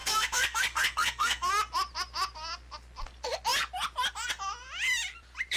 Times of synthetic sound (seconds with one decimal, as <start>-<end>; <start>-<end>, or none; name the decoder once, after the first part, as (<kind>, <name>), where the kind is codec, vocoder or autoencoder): 0.0-1.5 (codec, SNAC)